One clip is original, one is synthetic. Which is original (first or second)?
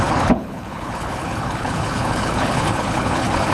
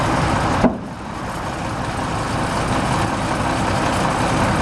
second